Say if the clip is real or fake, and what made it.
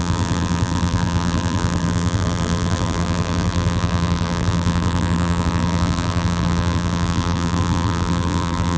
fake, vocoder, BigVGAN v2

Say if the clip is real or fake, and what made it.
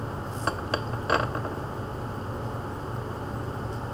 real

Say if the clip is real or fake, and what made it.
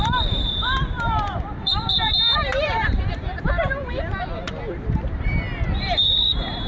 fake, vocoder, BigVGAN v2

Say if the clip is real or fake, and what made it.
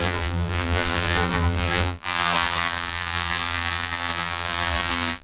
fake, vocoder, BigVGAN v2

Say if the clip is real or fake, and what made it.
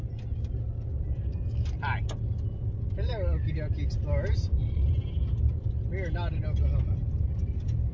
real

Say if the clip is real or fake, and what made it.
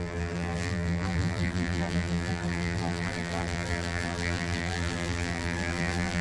fake, vocoder, BigVGAN v2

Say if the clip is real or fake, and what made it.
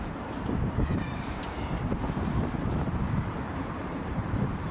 fake, vocoder, BigVGAN v2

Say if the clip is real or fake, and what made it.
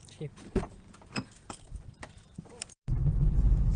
fake, vocoder, BigVGAN v2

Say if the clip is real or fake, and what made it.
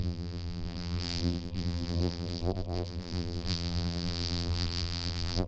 fake, vocoder, BigVGAN v2